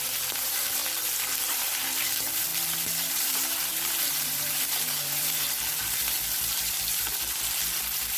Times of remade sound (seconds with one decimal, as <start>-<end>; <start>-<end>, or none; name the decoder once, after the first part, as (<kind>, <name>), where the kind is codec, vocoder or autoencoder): 0.0-0.8 (vocoder, BigVGAN v2); 1.4-2.5; 3.1-7.1

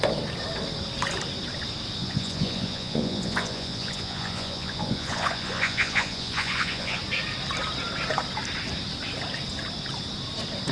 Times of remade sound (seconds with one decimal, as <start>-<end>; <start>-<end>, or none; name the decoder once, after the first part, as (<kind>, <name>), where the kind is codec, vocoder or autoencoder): 2.0-7.0 (vocoder, Vocos)

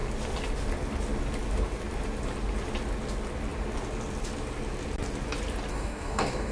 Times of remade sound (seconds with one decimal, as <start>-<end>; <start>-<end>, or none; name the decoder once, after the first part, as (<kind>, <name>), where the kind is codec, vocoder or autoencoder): 5.7-6.5 (codec, DAC)

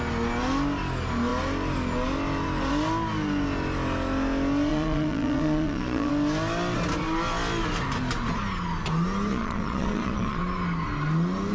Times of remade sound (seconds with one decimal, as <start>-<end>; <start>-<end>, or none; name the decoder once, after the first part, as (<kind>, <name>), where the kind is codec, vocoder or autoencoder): 4.7-6.1 (vocoder, Vocos); 9.3-10.4

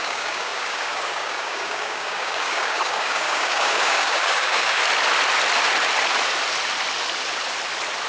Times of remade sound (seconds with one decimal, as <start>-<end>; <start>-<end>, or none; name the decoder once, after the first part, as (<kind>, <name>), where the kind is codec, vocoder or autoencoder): 0.0-4.8 (codec, DAC)

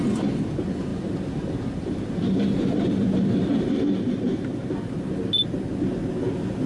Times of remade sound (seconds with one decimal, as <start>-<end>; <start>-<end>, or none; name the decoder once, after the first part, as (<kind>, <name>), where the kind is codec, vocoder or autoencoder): 0.9-3.7 (vocoder, BigVGAN v2)

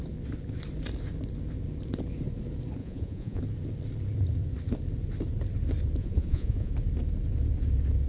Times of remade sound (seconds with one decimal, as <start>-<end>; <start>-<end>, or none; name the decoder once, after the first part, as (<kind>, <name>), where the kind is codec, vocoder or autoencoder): 2.8-3.4 (vocoder, Vocos); 6.0-6.7